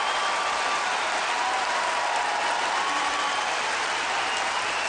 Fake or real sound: real